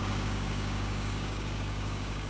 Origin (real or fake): fake